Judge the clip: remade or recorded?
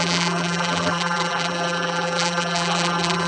remade